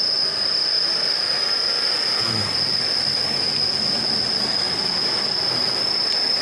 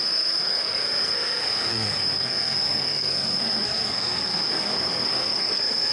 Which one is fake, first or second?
second